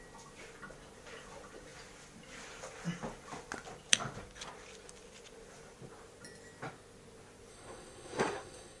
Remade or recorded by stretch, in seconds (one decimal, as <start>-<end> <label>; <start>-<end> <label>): 0.0-7.5 recorded; 7.5-8.8 remade

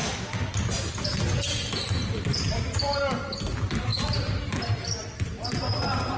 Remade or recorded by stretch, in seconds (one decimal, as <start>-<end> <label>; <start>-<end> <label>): 0.0-6.2 recorded

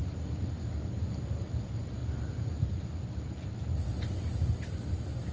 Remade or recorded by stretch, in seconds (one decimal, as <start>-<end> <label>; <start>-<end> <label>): 0.0-5.3 recorded